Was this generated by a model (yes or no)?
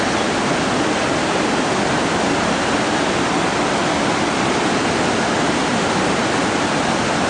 no